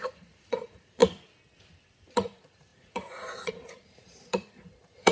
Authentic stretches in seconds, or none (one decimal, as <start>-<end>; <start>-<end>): 1.0-2.1